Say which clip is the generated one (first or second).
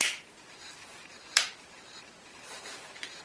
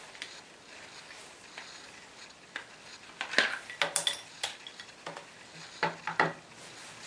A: first